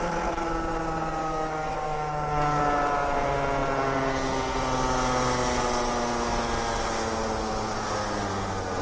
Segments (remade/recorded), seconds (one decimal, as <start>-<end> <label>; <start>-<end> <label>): 0.0-1.2 recorded; 1.2-2.6 remade; 2.6-8.8 recorded